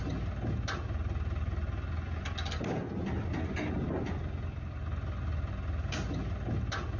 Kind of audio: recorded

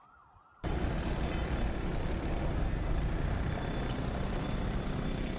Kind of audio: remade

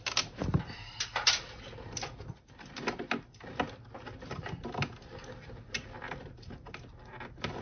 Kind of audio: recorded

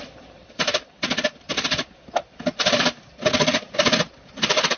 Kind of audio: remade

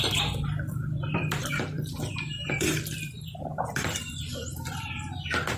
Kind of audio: remade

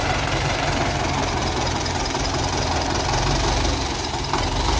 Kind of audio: remade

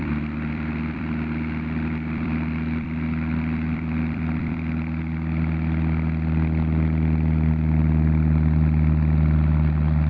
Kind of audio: remade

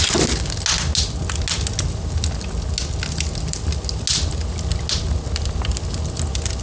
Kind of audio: recorded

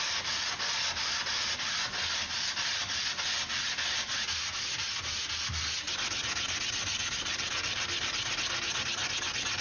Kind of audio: recorded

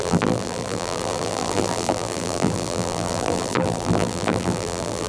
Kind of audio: remade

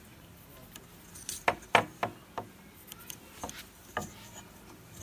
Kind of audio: recorded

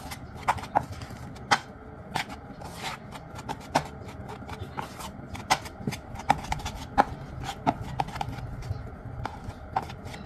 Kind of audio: recorded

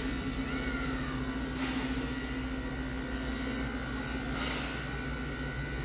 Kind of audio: recorded